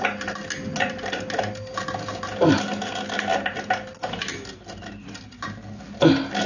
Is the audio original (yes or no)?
yes